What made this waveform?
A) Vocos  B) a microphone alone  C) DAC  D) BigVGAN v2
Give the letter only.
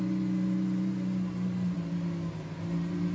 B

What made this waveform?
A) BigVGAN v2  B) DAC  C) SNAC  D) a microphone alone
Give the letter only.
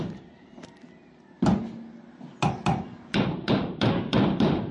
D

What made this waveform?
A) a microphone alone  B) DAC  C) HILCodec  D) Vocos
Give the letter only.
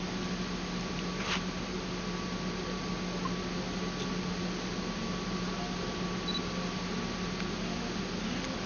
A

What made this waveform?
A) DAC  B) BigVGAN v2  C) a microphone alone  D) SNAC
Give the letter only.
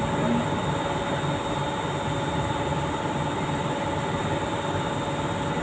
C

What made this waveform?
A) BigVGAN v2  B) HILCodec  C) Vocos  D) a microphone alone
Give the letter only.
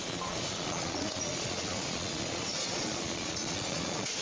C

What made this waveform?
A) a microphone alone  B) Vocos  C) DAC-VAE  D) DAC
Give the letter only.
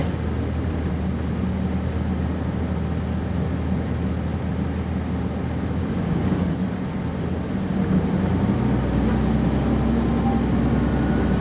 A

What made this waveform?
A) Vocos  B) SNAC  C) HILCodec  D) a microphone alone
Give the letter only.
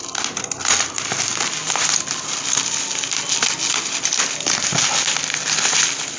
D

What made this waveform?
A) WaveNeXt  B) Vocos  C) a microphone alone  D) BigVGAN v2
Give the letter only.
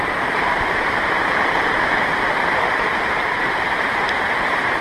D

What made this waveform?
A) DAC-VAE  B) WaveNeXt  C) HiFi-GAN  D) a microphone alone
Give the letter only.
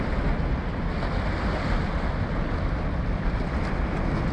D